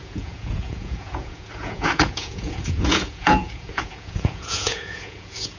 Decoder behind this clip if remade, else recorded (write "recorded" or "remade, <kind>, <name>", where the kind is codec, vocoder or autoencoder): remade, vocoder, Vocos